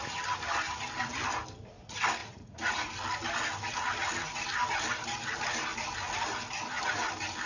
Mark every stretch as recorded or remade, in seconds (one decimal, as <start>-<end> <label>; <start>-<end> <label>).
0.0-2.2 recorded; 2.2-2.9 remade; 2.9-7.5 recorded